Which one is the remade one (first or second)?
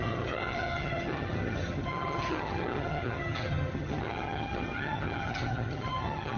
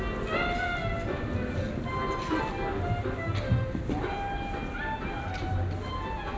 first